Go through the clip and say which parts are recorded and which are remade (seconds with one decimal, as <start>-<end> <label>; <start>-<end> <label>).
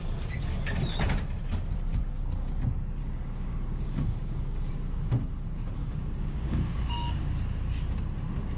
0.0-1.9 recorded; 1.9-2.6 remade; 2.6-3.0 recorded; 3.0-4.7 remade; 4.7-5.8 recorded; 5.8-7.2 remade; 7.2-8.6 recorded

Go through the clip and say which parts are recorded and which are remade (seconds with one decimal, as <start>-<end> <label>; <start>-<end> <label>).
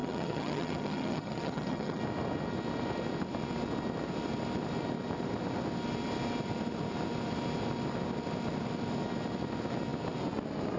0.0-2.0 remade; 2.0-10.8 recorded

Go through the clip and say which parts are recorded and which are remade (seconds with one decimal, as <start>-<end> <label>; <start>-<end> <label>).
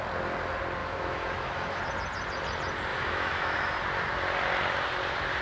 0.0-0.8 recorded; 0.8-1.8 remade; 1.8-2.9 recorded; 2.9-3.7 remade; 3.7-5.4 recorded